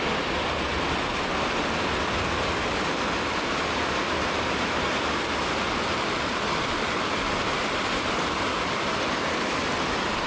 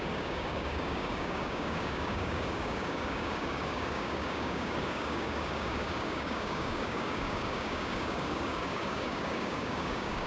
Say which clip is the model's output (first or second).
second